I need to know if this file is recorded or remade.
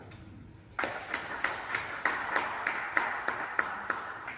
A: recorded